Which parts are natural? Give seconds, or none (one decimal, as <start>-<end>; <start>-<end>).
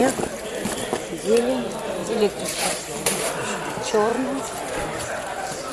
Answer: 0.0-2.0; 3.3-5.7